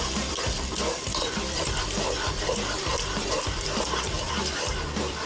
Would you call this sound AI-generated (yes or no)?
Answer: yes